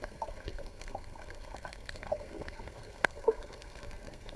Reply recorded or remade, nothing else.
remade